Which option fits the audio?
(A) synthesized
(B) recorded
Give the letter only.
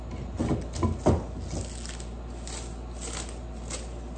B